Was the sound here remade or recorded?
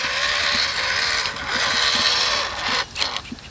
recorded